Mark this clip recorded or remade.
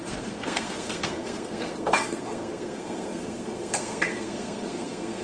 remade